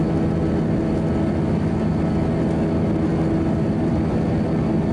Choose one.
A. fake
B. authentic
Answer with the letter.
B